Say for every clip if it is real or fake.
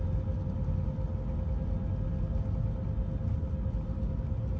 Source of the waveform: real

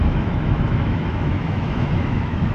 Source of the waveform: fake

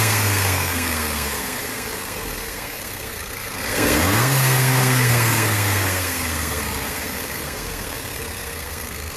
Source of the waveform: fake